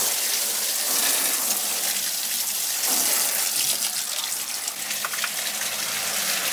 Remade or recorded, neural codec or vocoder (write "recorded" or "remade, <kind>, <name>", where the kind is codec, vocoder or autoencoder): recorded